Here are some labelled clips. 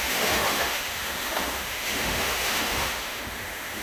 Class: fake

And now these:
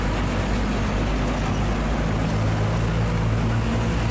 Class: real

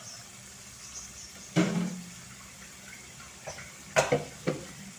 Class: fake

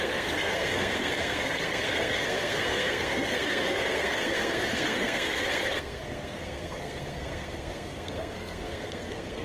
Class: fake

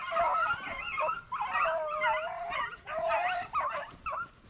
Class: real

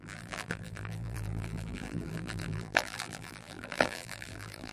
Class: fake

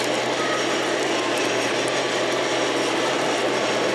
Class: real